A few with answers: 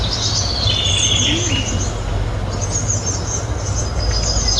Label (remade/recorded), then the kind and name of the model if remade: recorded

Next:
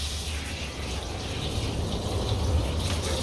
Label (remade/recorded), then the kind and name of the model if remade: recorded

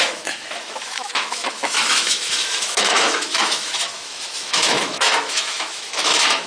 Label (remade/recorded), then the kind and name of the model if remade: remade, autoencoder, DAC-VAE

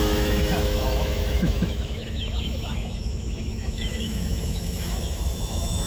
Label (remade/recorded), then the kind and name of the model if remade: remade, autoencoder, DAC-VAE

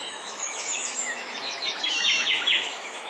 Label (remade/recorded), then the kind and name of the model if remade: remade, autoencoder, DAC-VAE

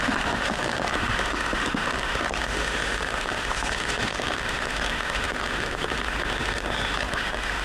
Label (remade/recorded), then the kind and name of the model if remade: remade, autoencoder, DAC-VAE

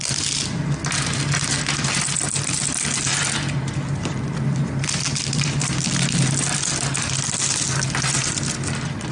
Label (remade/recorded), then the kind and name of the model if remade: recorded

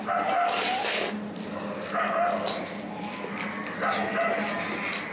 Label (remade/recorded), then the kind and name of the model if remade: recorded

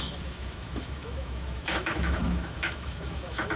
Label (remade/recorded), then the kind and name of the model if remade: remade, autoencoder, DAC-VAE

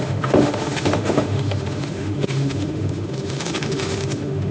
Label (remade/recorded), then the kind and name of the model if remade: remade, autoencoder, DAC-VAE